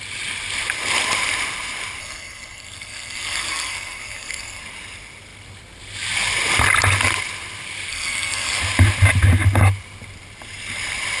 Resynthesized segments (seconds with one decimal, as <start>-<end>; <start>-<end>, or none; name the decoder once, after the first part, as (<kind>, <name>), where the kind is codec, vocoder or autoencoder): 2.0-4.6 (codec, SNAC); 7.9-8.6

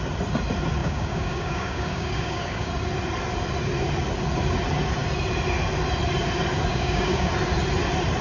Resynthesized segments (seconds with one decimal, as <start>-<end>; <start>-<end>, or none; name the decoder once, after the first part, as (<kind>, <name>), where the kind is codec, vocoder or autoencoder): 0.8-2.7 (codec, DAC); 6.7-7.3

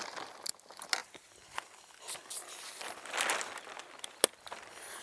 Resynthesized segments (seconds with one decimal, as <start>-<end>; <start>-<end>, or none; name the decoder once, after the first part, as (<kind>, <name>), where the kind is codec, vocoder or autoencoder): none

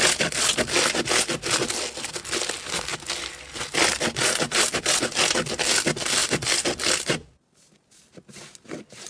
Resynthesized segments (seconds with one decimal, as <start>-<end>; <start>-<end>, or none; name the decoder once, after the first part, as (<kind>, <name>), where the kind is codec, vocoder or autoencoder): none

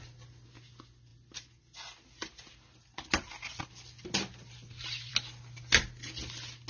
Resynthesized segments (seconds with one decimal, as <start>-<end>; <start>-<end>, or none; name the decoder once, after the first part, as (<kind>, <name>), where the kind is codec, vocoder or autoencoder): none

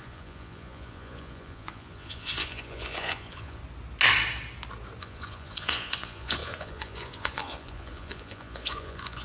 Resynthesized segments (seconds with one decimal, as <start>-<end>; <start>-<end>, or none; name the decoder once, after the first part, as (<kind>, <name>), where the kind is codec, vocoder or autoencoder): 0.0-3.6 (vocoder, Vocos); 5.0-9.2

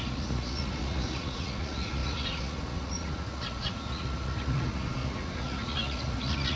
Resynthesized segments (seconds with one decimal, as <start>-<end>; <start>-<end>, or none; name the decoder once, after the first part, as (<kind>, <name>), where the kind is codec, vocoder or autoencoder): 0.0-6.6 (vocoder, Vocos)

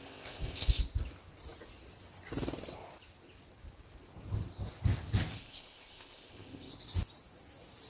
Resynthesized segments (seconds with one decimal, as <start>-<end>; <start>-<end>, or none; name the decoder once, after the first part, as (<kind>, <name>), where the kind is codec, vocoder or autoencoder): 0.0-0.8 (codec, ZipCodec); 5.3-6.7